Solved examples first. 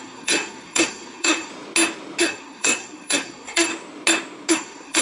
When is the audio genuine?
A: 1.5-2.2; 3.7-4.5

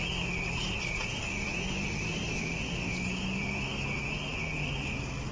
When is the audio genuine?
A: 0.0-5.3

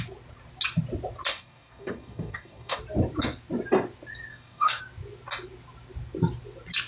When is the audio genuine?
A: 0.0-1.3; 2.8-4.3; 4.8-6.9

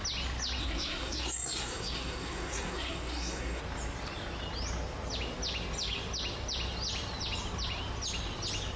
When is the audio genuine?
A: 0.0-0.6; 3.6-8.8

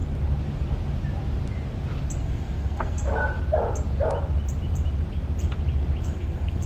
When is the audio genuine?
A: 0.0-2.2; 3.1-6.0

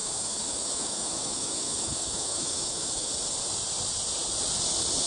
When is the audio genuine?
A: 3.1-5.1